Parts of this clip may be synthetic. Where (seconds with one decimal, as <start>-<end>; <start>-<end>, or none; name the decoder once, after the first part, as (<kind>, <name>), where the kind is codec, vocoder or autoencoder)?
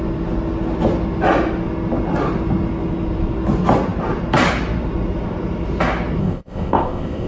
6.2-7.3 (codec, ZipCodec)